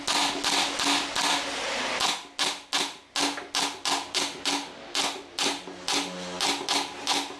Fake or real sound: real